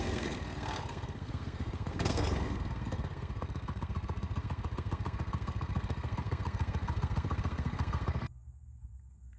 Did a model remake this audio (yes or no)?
yes